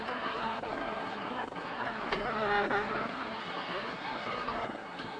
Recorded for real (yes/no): no